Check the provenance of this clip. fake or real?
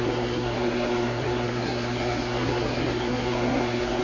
fake